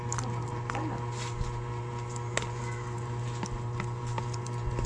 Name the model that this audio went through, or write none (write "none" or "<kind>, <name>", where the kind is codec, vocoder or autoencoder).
none